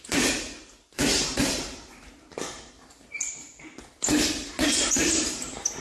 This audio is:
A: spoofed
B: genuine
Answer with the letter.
A